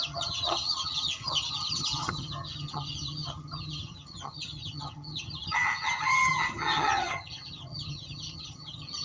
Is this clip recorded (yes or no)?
no